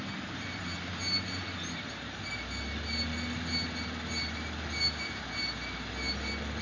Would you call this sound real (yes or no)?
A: yes